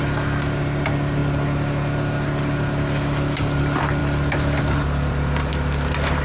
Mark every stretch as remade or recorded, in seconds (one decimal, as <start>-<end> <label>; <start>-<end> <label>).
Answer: 0.0-4.0 recorded; 4.0-5.5 remade; 5.5-6.2 recorded